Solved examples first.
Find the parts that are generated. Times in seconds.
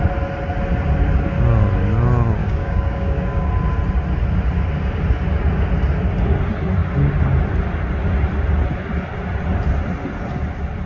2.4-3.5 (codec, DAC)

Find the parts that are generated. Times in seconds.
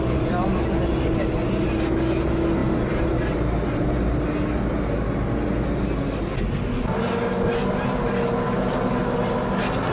none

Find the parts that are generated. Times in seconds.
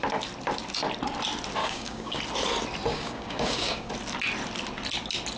1.6-2.2 (codec, DAC); 2.9-3.9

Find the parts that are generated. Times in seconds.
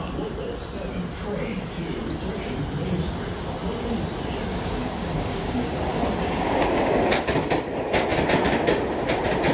4.5-5.8 (codec, DAC); 6.2-6.9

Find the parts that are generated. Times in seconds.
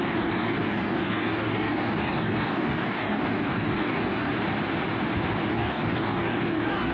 0.0-4.3 (codec, DAC); 5.5-6.9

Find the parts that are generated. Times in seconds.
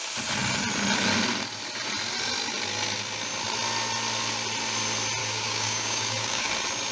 5.2-6.5 (codec, DAC)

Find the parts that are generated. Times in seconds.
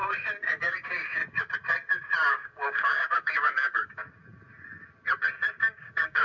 0.6-1.2 (codec, DAC); 2.3-4.0; 5.6-6.2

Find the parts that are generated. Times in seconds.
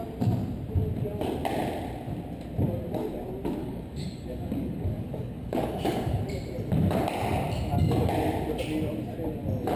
3.6-6.2 (codec, DAC)